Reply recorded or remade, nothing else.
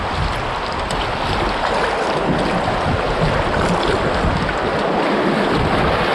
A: recorded